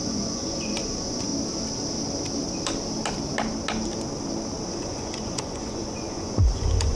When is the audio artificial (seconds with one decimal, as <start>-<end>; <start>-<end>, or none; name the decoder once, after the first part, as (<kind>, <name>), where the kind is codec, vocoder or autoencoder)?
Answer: 0.0-1.3 (vocoder, Vocos); 4.7-7.0